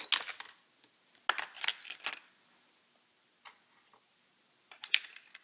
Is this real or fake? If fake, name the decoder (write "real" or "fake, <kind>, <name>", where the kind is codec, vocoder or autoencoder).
real